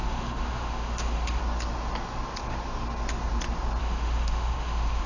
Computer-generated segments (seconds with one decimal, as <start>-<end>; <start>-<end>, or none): 0.0-1.4; 3.8-5.1